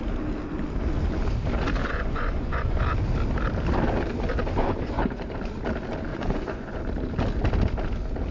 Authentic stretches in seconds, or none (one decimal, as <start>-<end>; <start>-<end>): 0.0-1.8; 2.8-4.6; 5.2-6.1; 6.8-8.3